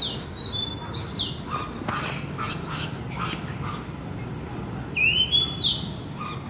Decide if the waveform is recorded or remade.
recorded